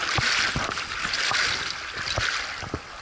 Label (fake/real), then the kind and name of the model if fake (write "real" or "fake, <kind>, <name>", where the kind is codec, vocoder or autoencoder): real